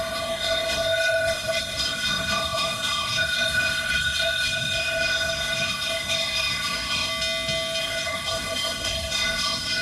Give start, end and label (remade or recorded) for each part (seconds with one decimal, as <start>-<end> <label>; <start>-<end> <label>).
0.0-7.1 remade; 7.1-7.8 recorded; 7.8-9.8 remade